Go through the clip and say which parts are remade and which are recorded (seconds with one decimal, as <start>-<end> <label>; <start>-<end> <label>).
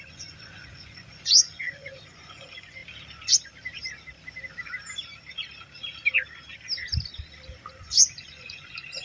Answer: 0.0-2.8 remade; 2.8-7.7 recorded; 7.7-9.0 remade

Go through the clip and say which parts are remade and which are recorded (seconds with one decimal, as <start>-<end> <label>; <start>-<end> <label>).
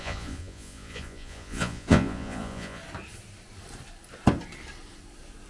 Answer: 0.0-2.8 remade; 2.8-5.5 recorded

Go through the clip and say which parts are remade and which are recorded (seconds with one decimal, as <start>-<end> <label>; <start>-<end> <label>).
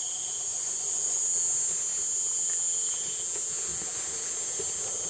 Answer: 0.0-0.5 recorded; 0.5-1.2 remade; 1.2-5.1 recorded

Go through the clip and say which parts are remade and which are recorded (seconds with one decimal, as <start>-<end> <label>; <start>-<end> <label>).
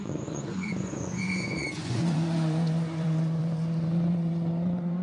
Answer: 0.0-3.4 remade; 3.4-4.1 recorded; 4.1-5.0 remade